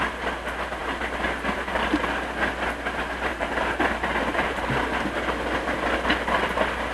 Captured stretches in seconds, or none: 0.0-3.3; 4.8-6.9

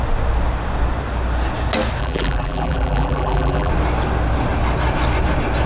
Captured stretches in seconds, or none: 0.0-2.0; 3.7-5.7

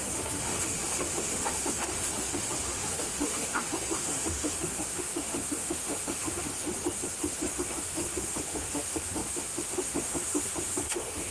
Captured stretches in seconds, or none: 6.5-7.5

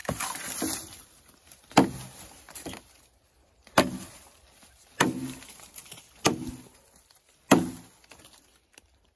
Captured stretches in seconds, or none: 1.7-5.8; 6.5-9.2

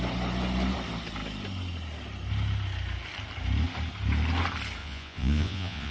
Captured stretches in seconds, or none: 0.0-4.8

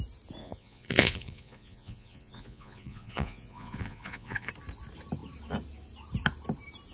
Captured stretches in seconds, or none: 0.0-0.4; 4.5-6.9